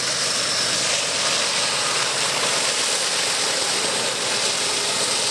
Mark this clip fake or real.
real